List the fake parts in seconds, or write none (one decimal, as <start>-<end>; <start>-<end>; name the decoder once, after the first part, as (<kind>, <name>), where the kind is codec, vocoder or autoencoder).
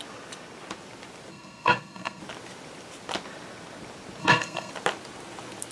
1.3-2.2 (codec, SNAC); 4.2-4.7